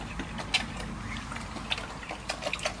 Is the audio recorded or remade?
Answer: recorded